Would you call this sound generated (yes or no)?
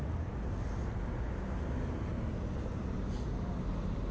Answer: no